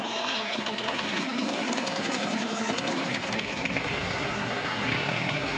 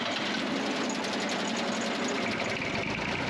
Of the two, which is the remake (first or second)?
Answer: first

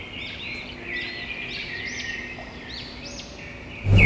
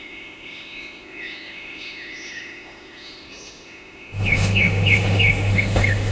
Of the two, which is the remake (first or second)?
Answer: second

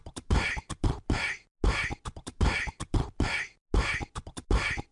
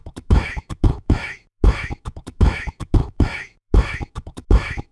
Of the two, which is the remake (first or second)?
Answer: second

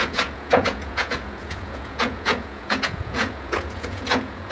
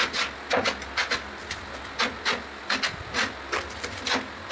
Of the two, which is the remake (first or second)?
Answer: first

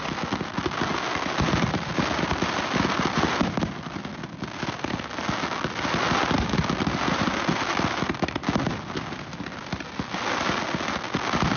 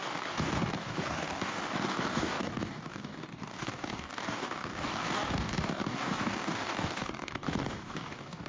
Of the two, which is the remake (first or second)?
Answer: second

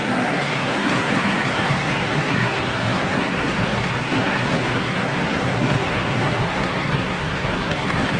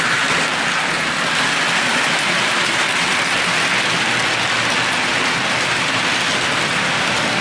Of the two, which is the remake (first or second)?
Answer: first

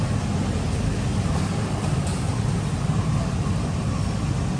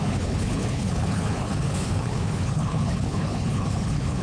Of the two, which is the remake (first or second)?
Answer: second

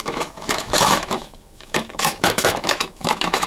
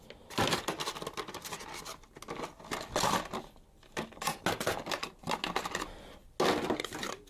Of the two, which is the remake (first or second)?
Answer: first